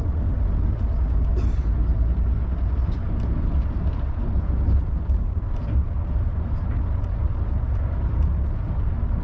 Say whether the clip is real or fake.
real